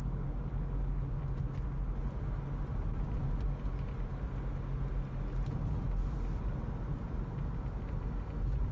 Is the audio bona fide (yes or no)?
yes